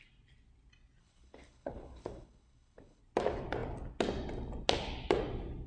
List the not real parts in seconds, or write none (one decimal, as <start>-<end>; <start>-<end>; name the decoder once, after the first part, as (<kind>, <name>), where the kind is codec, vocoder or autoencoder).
1.0-3.0 (codec, HILCodec)